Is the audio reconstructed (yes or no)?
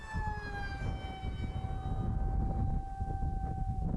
no